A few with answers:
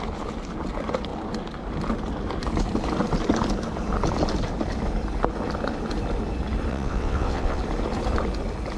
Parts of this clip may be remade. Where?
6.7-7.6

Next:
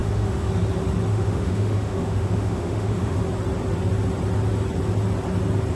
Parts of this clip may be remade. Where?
0.0-0.5; 1.1-3.2

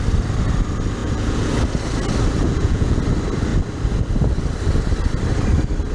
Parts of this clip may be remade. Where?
1.0-1.5; 2.4-3.0